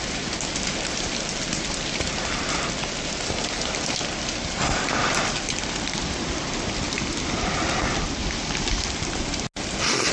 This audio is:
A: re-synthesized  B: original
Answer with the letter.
B